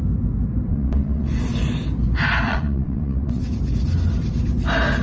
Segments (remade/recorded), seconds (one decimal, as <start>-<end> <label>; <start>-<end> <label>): 0.0-0.7 recorded; 0.7-1.3 remade; 1.3-2.5 recorded; 2.5-3.4 remade; 3.4-5.0 recorded